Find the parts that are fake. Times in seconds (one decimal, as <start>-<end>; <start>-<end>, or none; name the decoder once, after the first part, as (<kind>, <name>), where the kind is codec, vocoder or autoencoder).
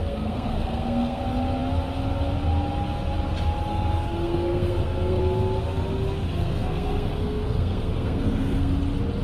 0.0-1.2 (codec, SNAC); 3.7-5.2; 6.4-8.7